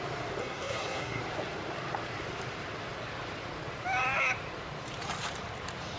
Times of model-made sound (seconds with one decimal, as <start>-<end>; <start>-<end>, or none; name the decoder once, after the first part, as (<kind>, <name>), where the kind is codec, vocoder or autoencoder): 0.4-1.2 (codec, SNAC)